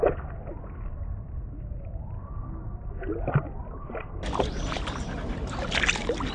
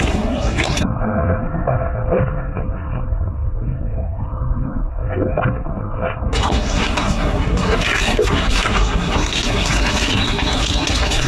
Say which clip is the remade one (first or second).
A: second